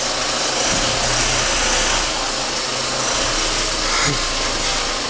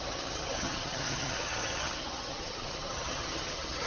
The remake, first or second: second